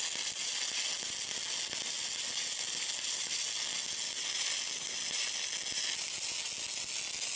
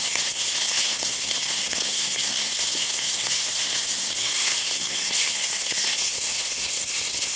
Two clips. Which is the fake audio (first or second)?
second